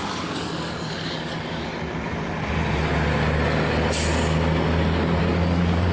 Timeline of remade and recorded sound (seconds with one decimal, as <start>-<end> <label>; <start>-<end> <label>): 0.0-1.7 remade; 1.7-5.2 recorded; 5.2-5.9 remade